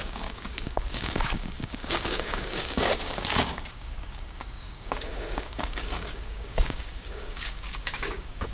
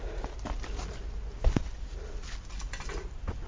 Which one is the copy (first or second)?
first